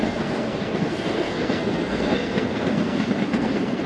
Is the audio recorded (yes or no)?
no